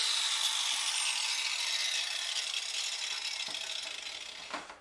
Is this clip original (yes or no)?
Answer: yes